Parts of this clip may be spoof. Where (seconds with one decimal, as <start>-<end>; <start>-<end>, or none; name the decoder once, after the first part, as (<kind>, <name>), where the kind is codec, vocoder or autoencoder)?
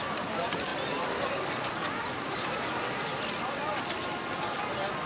0.7-3.8 (vocoder, BigVGAN v2)